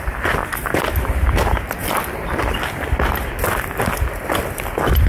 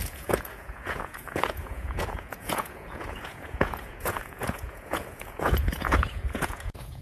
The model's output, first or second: second